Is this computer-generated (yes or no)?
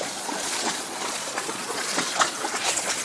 yes